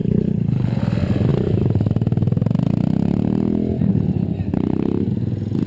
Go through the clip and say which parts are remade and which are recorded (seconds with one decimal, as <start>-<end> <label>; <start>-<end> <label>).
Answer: 0.0-0.8 remade; 0.8-5.7 recorded